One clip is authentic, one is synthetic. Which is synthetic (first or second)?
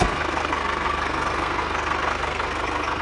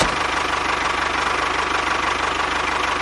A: first